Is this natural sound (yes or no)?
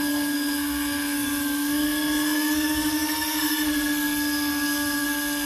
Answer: no